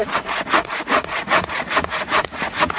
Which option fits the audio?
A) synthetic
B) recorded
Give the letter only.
A